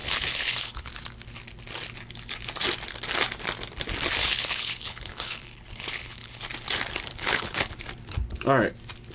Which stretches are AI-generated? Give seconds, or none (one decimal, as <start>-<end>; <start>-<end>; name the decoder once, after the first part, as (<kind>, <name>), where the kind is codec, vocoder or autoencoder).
0.0-0.9 (codec, HILCodec); 4.2-6.5; 7.1-7.7